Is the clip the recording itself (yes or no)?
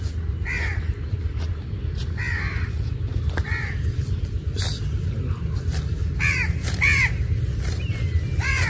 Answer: yes